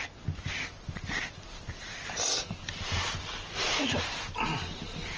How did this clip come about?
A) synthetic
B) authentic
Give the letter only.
B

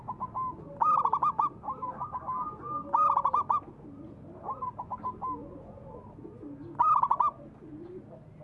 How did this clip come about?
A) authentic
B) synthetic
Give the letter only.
A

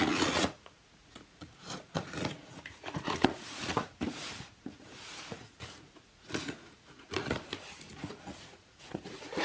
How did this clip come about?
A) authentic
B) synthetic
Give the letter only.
B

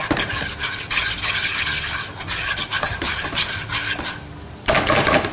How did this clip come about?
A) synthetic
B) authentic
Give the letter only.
B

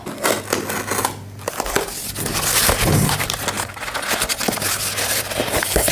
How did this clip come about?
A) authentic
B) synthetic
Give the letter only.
A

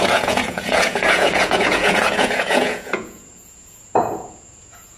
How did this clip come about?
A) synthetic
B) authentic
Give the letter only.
A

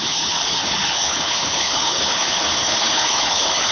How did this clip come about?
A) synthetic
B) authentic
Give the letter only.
A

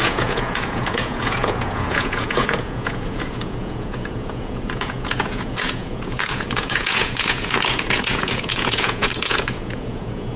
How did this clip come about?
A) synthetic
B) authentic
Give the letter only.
A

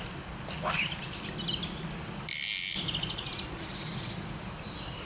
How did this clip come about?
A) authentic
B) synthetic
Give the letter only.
A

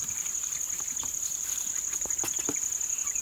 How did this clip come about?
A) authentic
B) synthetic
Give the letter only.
B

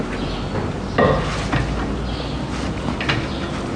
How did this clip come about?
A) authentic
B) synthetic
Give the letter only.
A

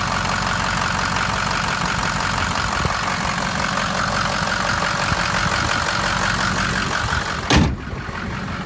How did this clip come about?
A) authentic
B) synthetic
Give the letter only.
A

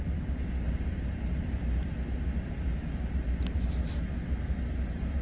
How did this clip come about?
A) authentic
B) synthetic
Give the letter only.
A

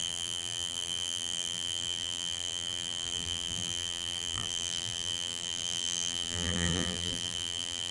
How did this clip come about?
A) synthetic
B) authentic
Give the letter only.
A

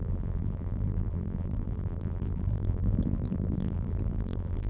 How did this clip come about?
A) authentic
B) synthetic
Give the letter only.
B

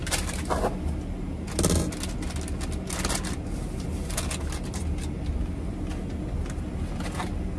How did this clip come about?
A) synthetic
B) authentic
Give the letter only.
B